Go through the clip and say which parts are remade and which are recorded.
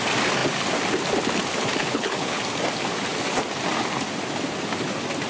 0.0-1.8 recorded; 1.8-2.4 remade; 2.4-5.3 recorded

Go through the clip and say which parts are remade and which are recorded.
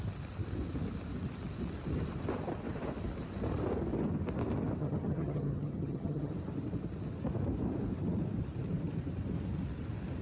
0.0-4.8 recorded; 4.8-6.3 remade; 6.3-10.2 recorded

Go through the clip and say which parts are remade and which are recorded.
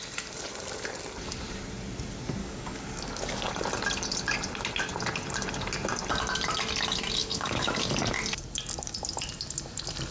0.0-2.4 recorded; 2.4-3.5 remade; 3.5-7.2 recorded; 7.2-7.8 remade; 7.8-10.1 recorded